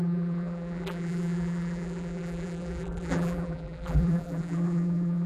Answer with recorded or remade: remade